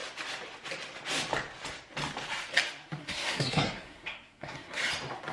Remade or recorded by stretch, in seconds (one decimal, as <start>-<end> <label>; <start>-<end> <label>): 0.0-3.0 recorded; 3.0-4.8 remade; 4.8-5.3 recorded